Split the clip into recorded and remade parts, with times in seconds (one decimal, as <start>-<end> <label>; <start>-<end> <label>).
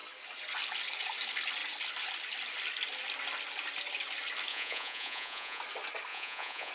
0.0-4.5 recorded; 4.5-5.6 remade; 5.6-6.1 recorded; 6.1-6.7 remade